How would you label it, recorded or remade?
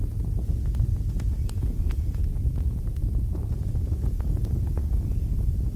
remade